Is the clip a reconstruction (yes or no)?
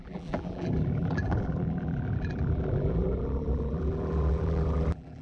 yes